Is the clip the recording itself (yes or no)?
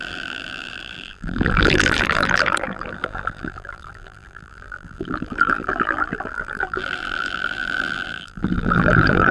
no